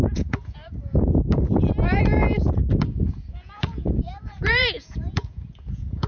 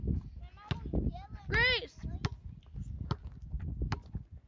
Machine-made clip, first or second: first